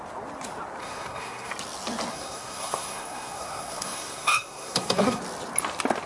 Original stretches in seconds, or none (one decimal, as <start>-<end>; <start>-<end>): 0.0-0.8; 1.5-2.1; 5.2-6.1